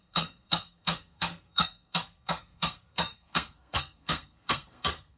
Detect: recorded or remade remade